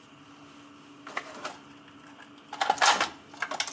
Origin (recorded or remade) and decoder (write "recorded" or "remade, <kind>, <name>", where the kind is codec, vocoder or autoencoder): recorded